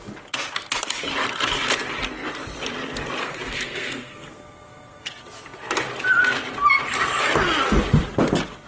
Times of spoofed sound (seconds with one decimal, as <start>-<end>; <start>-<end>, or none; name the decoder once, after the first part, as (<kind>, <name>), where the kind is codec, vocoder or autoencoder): 3.2-5.1 (codec, SNAC)